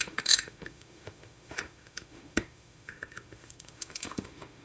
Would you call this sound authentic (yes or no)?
no